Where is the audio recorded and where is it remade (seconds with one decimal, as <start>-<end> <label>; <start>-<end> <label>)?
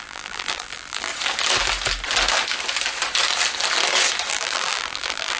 0.0-1.1 remade; 1.1-4.3 recorded; 4.3-5.4 remade